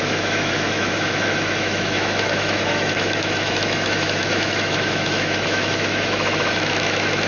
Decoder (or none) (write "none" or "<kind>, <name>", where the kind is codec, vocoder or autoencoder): autoencoder, DAC-VAE